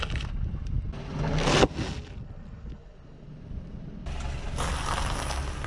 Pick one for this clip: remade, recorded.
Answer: recorded